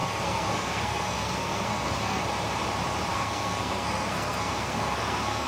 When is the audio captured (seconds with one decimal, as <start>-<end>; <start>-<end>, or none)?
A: 2.2-3.1